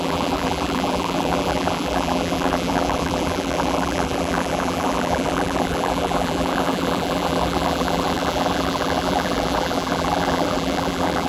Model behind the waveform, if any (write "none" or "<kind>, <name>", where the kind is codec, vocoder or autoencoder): vocoder, BigVGAN v2